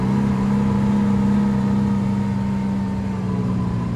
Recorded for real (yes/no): yes